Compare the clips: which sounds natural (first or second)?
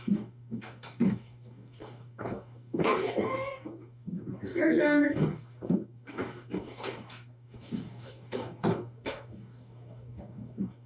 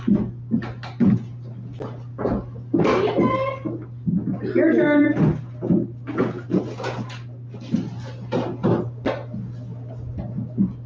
second